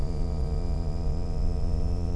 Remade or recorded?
remade